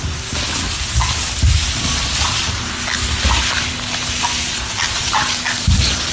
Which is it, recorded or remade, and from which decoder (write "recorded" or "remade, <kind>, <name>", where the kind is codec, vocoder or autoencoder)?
recorded